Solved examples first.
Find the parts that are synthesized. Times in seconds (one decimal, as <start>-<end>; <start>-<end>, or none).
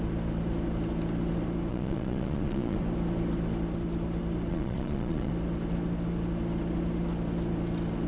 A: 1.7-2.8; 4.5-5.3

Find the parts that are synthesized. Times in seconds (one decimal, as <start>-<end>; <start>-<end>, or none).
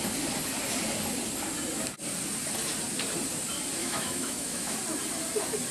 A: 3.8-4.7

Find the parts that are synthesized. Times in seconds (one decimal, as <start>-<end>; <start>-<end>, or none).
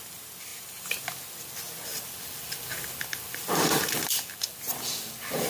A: 1.9-5.5